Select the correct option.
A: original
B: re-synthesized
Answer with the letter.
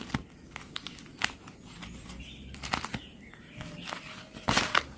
A